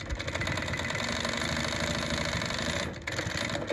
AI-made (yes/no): no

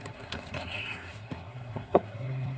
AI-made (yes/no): yes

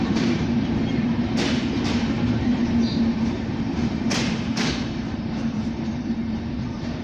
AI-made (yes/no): yes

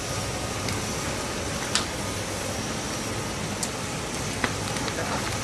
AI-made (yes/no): no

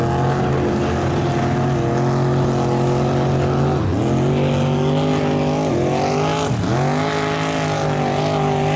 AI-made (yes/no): no